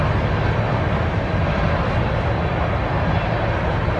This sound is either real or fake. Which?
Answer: real